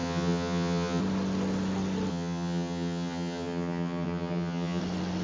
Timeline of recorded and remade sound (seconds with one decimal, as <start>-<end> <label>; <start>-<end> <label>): 0.0-1.0 remade; 1.0-2.1 recorded; 2.1-4.8 remade; 4.8-5.2 recorded